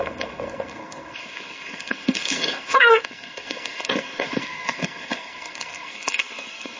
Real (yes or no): no